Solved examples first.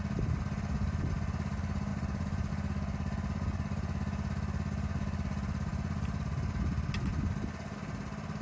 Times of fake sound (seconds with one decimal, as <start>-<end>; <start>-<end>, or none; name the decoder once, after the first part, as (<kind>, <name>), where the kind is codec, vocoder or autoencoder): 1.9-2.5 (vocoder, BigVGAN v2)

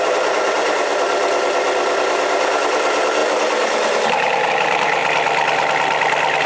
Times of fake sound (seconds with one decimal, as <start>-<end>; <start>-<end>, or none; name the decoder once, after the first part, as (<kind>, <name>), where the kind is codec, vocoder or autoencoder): 0.0-0.9 (vocoder, BigVGAN v2); 2.0-5.0

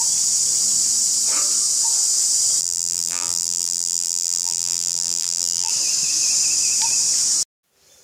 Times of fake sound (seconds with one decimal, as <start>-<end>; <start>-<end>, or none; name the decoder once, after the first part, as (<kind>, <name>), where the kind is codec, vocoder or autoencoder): 2.6-5.7 (vocoder, BigVGAN v2)